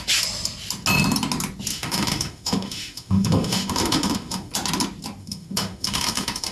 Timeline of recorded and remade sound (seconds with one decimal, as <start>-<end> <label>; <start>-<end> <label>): 0.0-1.7 recorded; 1.7-4.5 remade; 4.5-5.2 recorded; 5.2-6.5 remade